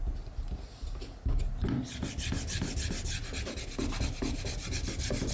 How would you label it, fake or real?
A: real